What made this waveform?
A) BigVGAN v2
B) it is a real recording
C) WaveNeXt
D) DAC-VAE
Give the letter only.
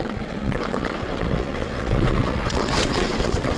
C